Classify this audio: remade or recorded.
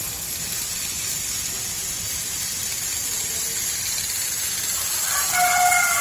recorded